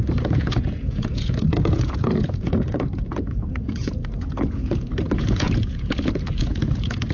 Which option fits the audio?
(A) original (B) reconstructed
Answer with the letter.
B